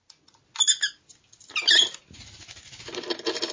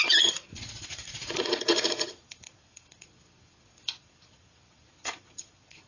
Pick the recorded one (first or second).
first